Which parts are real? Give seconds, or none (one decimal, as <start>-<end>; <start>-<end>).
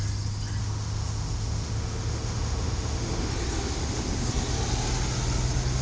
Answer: 0.0-0.6; 3.3-3.8; 4.3-5.8